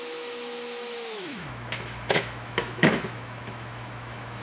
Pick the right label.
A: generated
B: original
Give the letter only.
A